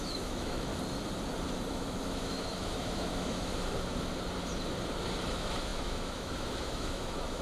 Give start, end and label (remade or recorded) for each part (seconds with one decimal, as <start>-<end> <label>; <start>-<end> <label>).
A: 0.0-0.7 remade; 0.7-1.7 recorded; 1.7-3.5 remade; 3.5-5.3 recorded; 5.3-7.4 remade